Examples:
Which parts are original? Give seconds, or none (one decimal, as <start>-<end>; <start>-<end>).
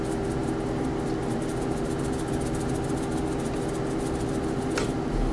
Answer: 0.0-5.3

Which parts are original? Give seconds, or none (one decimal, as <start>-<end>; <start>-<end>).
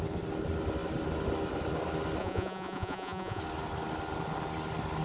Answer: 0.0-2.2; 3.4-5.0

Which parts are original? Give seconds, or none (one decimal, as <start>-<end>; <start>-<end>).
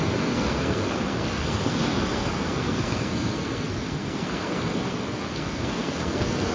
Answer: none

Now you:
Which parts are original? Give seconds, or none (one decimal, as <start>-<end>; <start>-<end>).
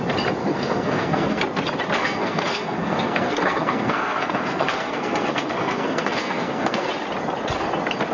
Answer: 0.0-0.4; 1.4-2.0; 6.9-8.1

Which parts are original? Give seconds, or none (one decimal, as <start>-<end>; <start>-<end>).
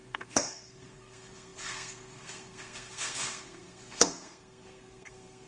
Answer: none